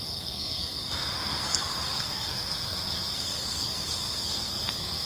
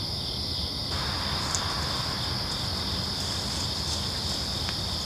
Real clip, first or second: second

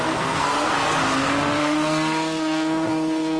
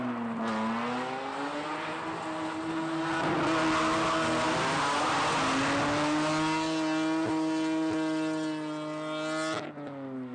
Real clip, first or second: second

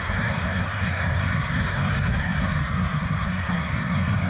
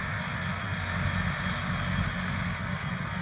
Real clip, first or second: second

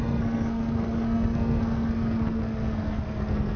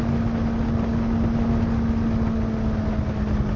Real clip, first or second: second